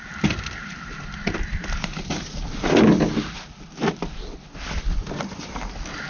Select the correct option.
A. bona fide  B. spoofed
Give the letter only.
A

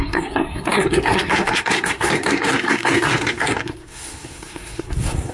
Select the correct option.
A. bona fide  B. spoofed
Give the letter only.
B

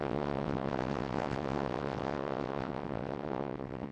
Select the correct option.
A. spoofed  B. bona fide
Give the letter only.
A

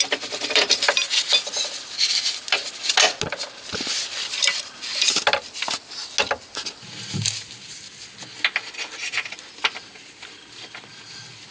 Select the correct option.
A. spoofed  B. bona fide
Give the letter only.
B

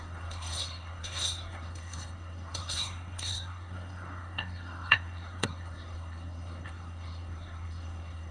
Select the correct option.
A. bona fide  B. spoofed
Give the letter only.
B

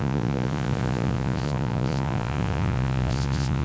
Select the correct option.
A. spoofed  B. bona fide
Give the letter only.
A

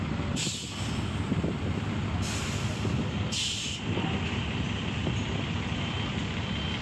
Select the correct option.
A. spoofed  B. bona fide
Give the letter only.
B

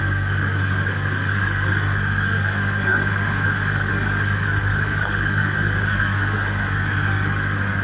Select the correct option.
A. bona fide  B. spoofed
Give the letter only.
B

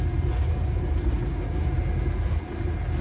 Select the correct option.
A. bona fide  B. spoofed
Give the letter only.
A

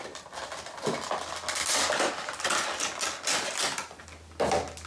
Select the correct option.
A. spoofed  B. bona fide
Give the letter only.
B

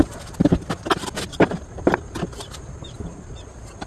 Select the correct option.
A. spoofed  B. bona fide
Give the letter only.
B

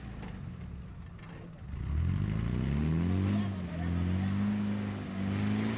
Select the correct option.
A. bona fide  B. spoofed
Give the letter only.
A